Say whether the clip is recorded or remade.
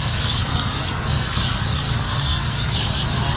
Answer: remade